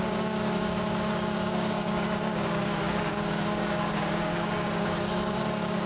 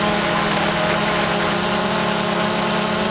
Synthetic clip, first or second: first